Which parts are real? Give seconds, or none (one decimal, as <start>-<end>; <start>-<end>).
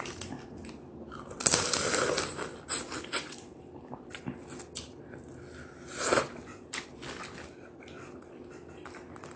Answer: 0.0-9.4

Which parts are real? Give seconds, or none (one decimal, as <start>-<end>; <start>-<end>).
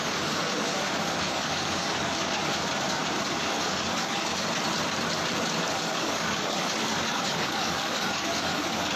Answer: 2.4-3.2; 4.3-5.7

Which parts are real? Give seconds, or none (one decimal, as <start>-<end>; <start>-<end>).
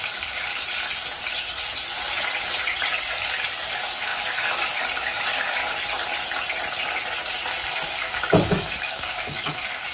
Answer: 0.5-3.0; 5.6-7.5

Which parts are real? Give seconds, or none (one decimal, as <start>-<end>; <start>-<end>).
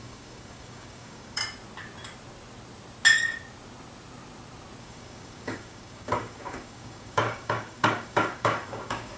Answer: 1.4-4.8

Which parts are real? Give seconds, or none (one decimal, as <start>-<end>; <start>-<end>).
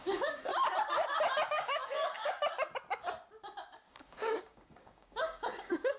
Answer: 0.5-1.5; 2.4-3.9